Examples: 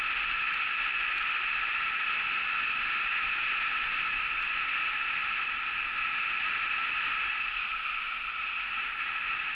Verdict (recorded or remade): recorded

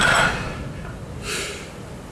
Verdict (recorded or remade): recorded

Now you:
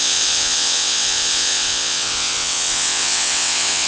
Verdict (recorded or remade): remade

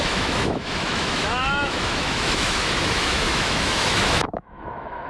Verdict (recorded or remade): remade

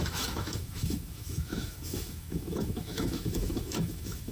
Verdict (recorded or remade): remade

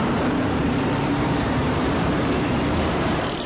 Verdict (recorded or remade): remade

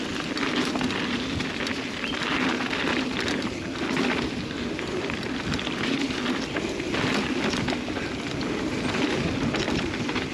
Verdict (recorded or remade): recorded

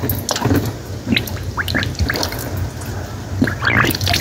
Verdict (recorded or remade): recorded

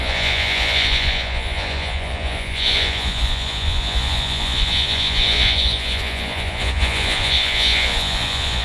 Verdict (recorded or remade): remade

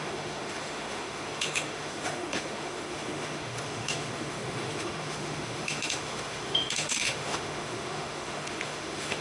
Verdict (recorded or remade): remade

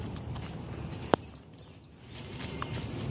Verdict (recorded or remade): recorded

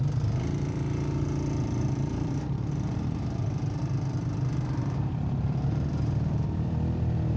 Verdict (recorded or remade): remade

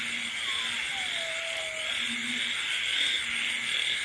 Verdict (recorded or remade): recorded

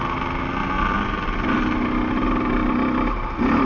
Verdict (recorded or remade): recorded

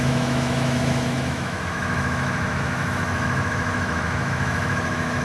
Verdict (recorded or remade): remade